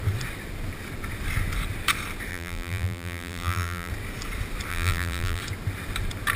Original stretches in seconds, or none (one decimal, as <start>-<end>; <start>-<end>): 0.0-2.3; 3.9-4.7; 5.4-6.4